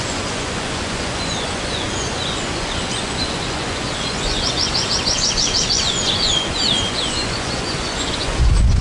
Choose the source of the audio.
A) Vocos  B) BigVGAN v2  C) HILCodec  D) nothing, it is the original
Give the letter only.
A